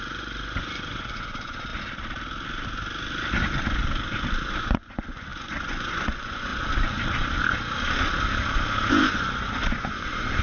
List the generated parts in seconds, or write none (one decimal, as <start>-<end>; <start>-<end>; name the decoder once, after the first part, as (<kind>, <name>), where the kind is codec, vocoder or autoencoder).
0.0-1.7 (vocoder, Vocos); 4.6-6.5; 8.9-10.4